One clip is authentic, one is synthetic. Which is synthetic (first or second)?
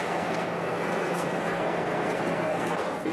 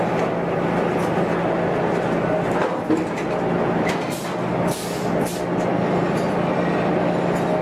first